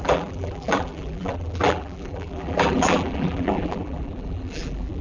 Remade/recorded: remade